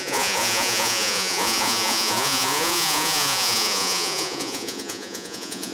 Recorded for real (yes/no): no